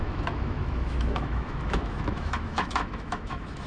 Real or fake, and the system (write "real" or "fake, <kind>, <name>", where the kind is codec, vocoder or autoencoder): fake, autoencoder, DAC-VAE